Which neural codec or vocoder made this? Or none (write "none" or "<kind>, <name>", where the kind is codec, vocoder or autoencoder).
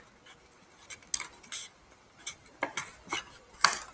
none